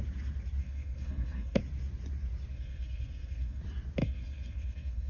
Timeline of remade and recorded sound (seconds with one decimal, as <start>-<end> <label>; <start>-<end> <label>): 0.0-0.6 recorded; 0.6-1.6 remade; 1.6-2.5 recorded; 2.5-3.6 remade; 3.6-4.0 recorded; 4.0-5.1 remade